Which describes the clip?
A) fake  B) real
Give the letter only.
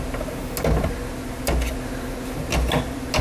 B